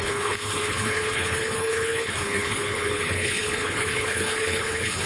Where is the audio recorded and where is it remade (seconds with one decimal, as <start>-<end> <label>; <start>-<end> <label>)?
0.0-5.1 remade